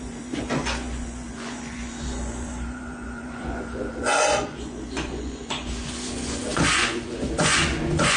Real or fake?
fake